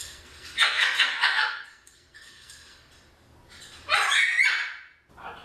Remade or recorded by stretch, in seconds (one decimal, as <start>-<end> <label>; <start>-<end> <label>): 0.0-2.9 remade; 2.9-5.4 recorded